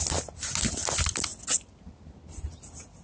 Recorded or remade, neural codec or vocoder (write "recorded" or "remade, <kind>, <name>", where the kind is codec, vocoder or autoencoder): recorded